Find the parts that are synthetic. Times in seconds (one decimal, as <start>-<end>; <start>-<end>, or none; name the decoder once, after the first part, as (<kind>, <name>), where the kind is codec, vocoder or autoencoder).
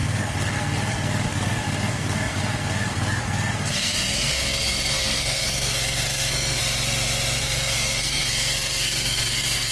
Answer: 0.0-6.6 (codec, SNAC); 7.4-9.7